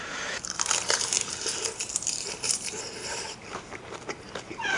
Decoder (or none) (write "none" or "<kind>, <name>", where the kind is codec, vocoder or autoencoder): vocoder, BigVGAN v2